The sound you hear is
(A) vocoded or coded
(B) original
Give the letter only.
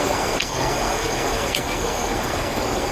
A